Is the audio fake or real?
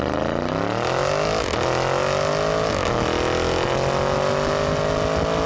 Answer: real